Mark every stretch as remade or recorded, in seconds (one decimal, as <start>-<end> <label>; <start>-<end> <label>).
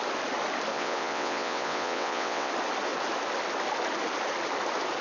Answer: 0.0-0.7 recorded; 0.7-2.5 remade; 2.5-5.0 recorded